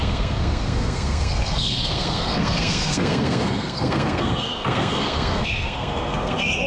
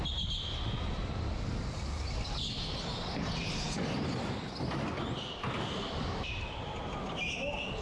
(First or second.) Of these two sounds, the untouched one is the second